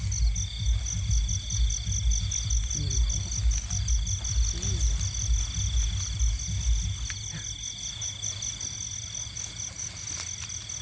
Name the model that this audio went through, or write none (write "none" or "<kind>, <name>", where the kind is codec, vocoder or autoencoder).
none